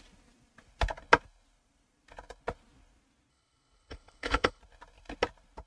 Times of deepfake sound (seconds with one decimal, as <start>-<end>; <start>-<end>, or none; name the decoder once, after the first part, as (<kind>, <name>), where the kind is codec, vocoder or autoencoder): 3.3-4.6 (codec, HILCodec)